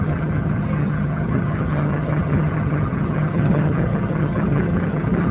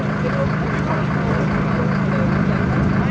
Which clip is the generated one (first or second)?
first